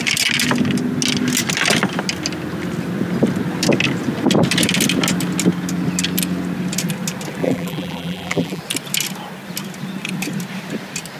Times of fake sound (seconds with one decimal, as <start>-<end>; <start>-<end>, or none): 7.4-8.6